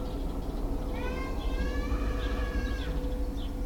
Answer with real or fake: real